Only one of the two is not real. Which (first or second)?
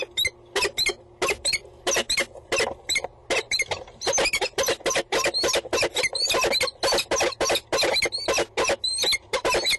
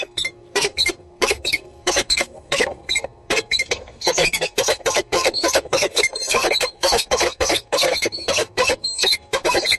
second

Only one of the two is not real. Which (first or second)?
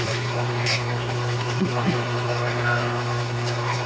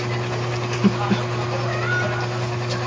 first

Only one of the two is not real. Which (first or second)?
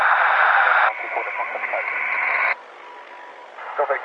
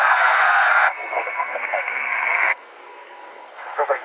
second